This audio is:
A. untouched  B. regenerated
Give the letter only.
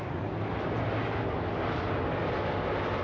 A